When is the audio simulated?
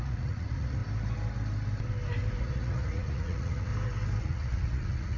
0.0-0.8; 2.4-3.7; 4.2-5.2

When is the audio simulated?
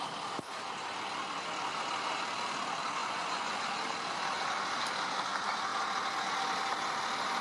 3.0-3.6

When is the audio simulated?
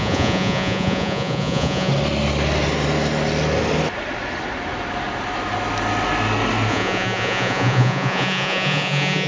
0.0-1.9; 6.7-9.3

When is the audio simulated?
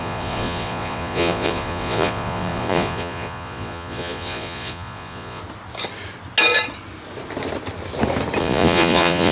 0.0-5.4; 8.4-9.3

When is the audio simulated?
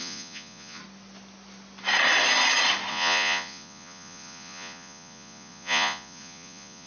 0.0-0.8; 2.9-6.9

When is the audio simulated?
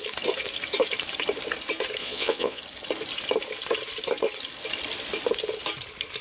2.0-2.6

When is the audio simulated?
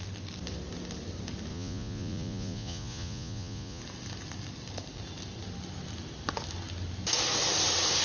1.5-3.8